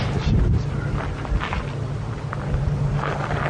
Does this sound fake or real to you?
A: fake